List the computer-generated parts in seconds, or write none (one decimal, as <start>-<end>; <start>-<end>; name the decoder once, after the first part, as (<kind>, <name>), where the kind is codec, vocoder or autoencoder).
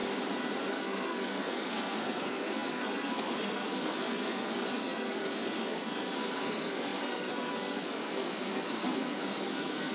0.7-9.9 (codec, SNAC)